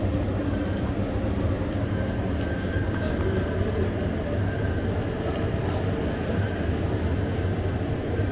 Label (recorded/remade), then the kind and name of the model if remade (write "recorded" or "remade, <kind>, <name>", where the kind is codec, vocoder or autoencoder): recorded